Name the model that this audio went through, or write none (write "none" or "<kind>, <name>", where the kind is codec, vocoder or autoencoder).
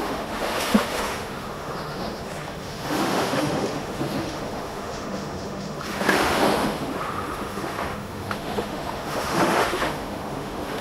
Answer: autoencoder, DAC-VAE